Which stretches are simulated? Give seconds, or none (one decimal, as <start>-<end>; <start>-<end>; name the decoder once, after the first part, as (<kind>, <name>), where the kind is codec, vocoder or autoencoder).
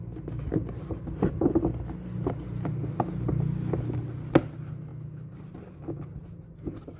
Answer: none